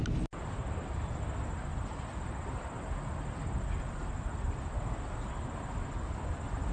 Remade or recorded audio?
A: recorded